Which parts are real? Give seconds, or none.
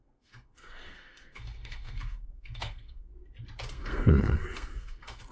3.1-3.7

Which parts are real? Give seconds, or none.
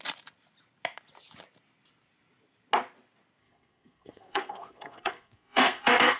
0.0-3.4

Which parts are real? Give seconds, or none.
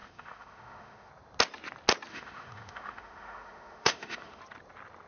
1.1-2.1; 4.4-5.1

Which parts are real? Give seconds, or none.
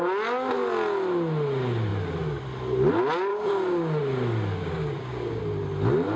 0.0-3.3; 4.0-4.6; 5.4-6.2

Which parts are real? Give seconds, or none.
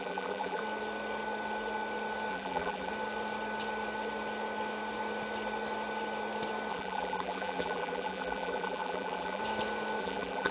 0.6-2.3; 2.9-6.7; 9.4-10.0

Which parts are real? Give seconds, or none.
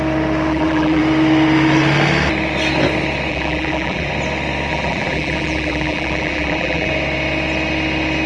0.0-0.5; 1.0-3.3; 4.1-4.7; 6.9-8.3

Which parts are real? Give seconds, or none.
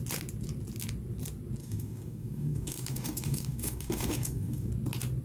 0.0-1.6; 4.7-5.2